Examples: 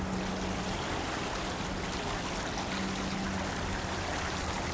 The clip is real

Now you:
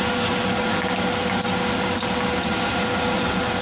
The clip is real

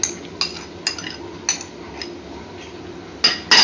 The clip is real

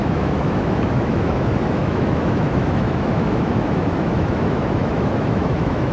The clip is fake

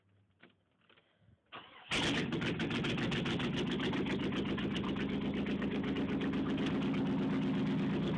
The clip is real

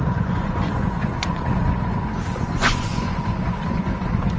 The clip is fake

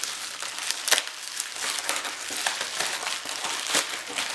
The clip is real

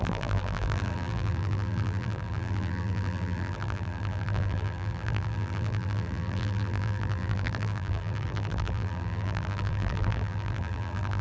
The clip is fake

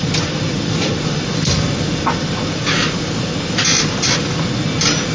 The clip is real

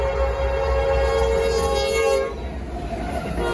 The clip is real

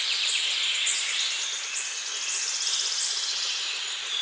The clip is real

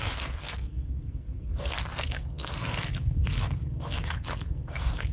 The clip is fake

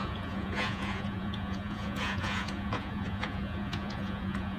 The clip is fake